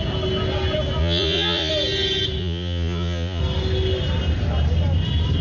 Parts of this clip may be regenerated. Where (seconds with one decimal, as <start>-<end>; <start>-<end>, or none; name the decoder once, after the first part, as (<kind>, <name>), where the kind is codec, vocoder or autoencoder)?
1.0-1.7 (vocoder, Vocos); 2.4-3.4